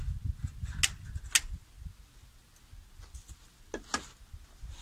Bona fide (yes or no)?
yes